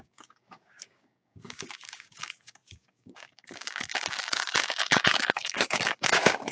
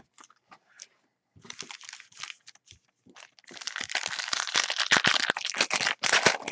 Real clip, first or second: second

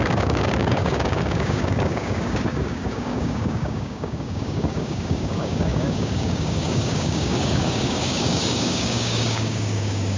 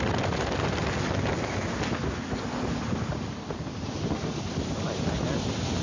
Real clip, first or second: second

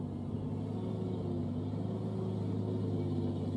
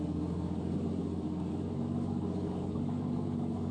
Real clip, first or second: first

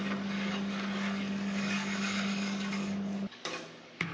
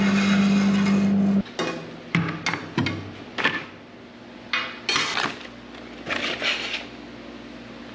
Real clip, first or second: second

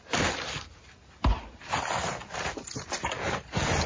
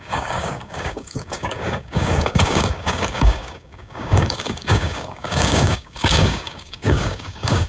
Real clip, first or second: first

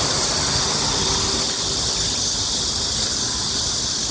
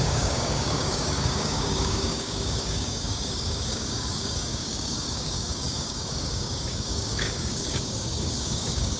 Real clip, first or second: first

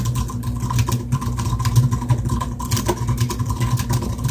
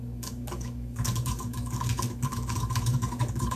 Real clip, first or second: first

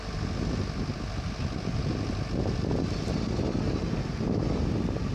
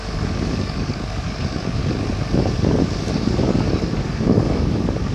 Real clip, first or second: first